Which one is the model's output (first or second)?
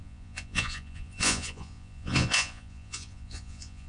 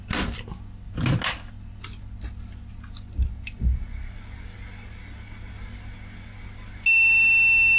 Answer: first